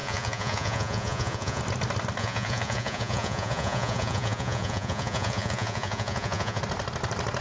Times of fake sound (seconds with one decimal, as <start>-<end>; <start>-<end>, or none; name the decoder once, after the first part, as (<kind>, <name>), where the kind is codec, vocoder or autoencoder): 0.0-1.6 (vocoder, Vocos); 2.2-6.6

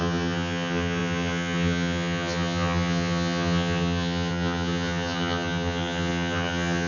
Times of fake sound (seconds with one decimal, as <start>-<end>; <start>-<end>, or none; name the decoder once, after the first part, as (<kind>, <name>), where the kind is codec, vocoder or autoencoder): 0.0-6.9 (vocoder, HiFi-GAN)